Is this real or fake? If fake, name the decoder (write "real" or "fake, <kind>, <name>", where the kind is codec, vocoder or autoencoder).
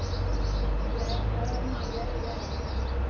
real